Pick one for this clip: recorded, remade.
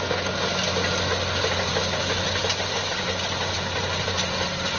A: recorded